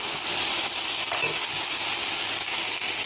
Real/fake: real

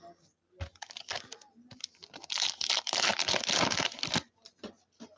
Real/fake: real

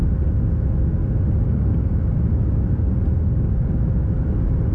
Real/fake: real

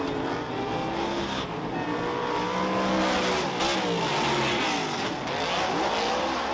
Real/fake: real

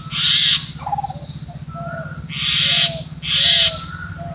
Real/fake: real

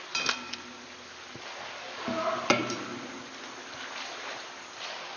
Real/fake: real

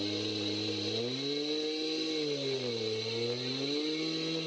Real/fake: real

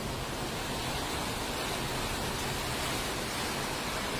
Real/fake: real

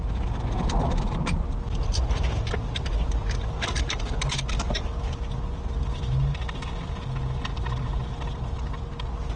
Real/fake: real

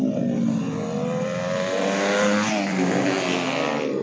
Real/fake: real